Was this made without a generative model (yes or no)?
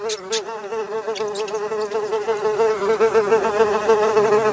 yes